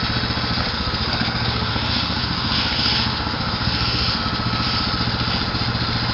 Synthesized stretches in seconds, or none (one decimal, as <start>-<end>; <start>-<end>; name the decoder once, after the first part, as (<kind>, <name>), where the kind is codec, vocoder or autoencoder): 0.6-4.2 (codec, SNAC)